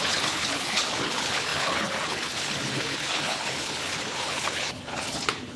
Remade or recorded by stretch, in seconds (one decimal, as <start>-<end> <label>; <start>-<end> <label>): 0.0-5.6 remade